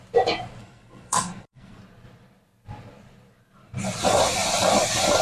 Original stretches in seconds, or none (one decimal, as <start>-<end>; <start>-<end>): 0.0-0.6; 1.8-5.2